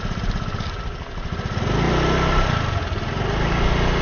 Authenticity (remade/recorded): recorded